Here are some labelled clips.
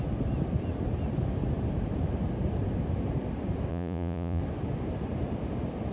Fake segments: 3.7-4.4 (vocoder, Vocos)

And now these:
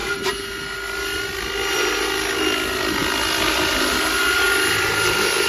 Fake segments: none

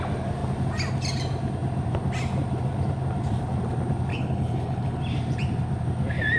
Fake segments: 4.1-5.0 (codec, HILCodec)